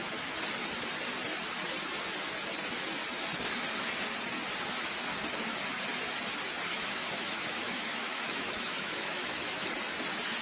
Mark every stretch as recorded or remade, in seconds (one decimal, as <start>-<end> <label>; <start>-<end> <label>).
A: 0.0-6.7 recorded; 6.7-9.7 remade; 9.7-10.4 recorded